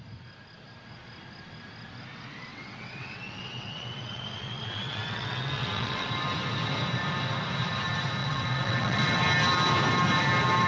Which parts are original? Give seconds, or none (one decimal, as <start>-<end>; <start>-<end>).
0.0-2.5; 6.1-8.2; 9.2-10.7